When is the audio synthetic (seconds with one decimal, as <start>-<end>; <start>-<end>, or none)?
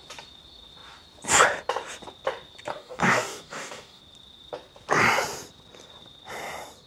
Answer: 2.7-4.0